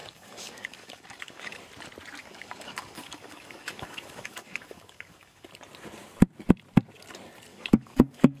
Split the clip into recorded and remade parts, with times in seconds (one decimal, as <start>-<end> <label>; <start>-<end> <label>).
0.0-1.6 remade; 1.6-2.2 recorded; 2.2-5.5 remade; 5.5-7.5 recorded; 7.5-8.4 remade